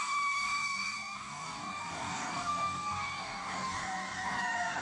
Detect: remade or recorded remade